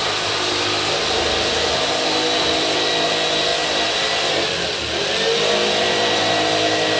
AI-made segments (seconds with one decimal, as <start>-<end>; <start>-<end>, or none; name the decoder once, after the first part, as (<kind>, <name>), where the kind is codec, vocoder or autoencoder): none